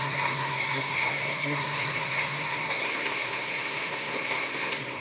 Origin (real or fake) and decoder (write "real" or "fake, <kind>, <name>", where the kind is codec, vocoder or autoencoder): fake, codec, SNAC